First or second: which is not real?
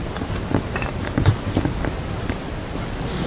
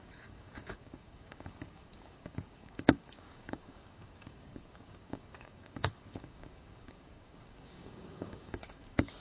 second